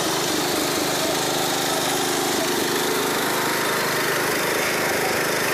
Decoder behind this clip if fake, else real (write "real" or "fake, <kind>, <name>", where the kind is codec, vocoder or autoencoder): real